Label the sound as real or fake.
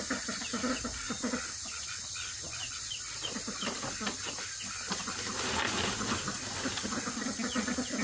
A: real